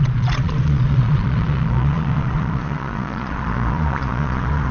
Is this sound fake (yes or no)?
yes